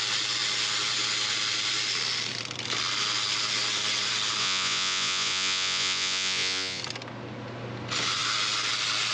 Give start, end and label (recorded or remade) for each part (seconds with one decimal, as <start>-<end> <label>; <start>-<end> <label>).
0.0-4.4 recorded; 4.4-6.8 remade; 6.8-9.1 recorded